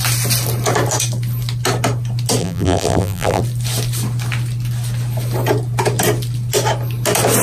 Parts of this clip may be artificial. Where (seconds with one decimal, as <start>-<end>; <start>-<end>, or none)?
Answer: 2.4-3.4